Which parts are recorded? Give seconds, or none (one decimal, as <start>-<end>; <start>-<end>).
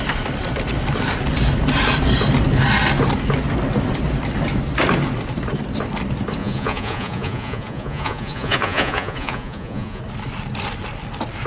0.0-6.4; 10.0-11.5